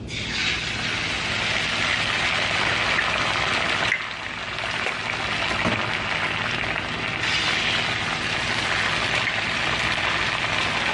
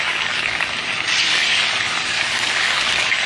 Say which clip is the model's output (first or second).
second